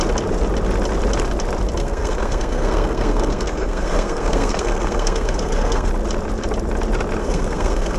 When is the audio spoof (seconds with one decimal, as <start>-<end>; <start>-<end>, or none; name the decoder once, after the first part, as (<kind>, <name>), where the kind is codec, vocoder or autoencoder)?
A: 1.8-5.9 (codec, SNAC); 7.2-8.0